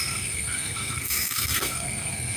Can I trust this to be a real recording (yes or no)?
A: no